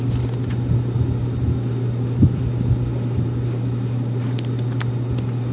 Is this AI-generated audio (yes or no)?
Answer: no